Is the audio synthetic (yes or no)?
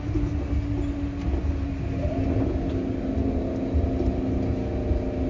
no